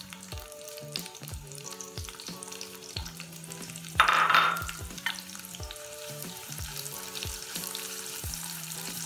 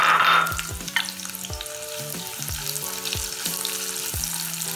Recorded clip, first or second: second